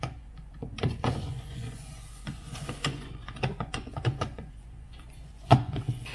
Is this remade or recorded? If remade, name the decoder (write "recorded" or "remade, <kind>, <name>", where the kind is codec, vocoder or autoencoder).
remade, vocoder, Vocos